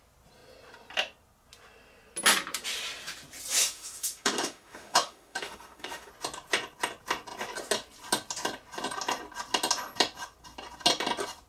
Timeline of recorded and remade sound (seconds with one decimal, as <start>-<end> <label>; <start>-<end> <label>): 0.0-3.6 recorded; 3.6-6.1 remade; 6.1-11.5 recorded